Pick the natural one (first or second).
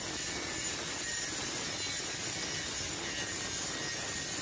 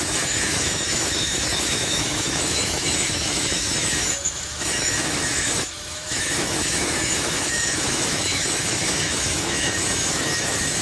first